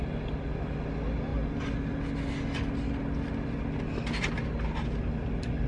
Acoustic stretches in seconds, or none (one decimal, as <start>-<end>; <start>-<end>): 0.0-5.7